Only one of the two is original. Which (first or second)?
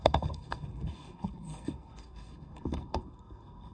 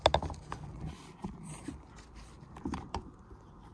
second